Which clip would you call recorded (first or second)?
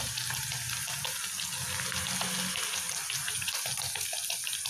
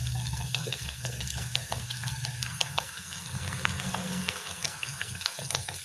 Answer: first